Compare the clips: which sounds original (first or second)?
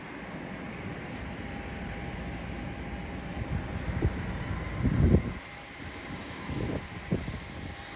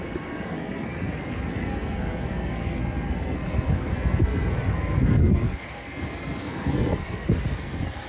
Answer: first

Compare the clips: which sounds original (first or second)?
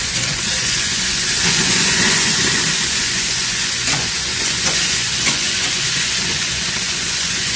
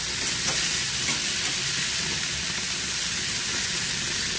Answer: second